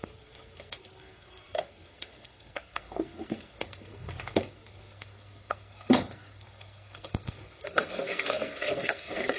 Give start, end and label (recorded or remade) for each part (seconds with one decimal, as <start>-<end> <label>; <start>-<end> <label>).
0.0-9.4 remade

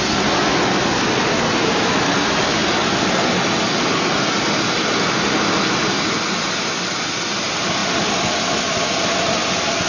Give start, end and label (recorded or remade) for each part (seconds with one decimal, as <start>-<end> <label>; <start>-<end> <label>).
0.0-9.9 recorded

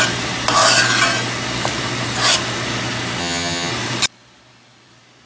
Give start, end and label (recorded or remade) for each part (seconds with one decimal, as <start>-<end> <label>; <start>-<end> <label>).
0.0-3.2 recorded; 3.2-3.7 remade; 3.7-5.3 recorded

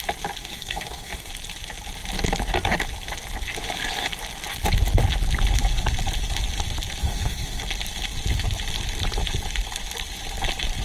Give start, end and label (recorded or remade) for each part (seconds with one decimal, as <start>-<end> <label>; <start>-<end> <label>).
0.0-0.4 recorded; 0.4-1.3 remade; 1.3-7.0 recorded; 7.0-7.6 remade; 7.6-10.8 recorded

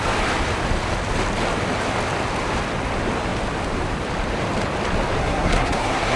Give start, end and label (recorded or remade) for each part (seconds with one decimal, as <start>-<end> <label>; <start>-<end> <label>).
0.0-5.2 recorded; 5.2-6.2 remade